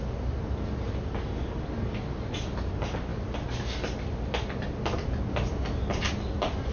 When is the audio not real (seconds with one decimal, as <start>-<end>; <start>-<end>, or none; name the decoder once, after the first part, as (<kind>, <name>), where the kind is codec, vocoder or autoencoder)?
none